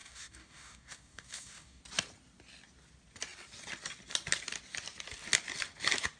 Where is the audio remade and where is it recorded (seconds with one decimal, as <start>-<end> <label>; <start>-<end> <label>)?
0.0-1.8 remade; 1.8-6.2 recorded